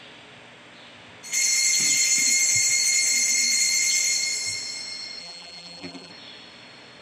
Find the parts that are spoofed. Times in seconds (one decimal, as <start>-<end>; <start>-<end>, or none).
5.2-6.1